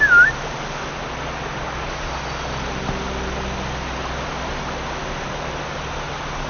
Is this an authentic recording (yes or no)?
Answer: yes